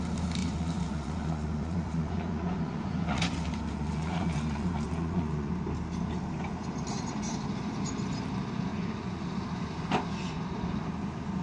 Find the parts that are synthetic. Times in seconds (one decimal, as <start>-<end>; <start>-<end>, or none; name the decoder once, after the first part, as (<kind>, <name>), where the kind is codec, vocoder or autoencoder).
0.4-5.5 (vocoder, Vocos); 8.7-9.2